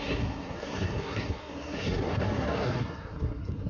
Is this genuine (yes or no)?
no